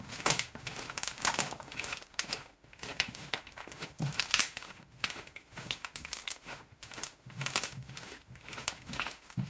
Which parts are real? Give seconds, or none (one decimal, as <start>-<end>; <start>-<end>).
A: none